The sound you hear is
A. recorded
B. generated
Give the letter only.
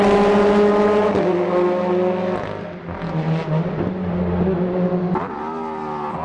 A